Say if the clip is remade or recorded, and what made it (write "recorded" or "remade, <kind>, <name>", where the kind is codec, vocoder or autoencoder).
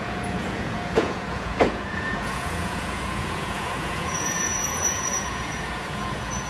remade, vocoder, Vocos